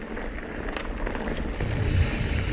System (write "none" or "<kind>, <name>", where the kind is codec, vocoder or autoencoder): none